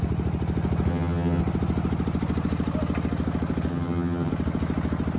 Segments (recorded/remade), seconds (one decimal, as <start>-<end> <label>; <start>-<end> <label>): 0.0-0.9 recorded; 0.9-1.4 remade; 1.4-3.7 recorded; 3.7-4.3 remade; 4.3-5.2 recorded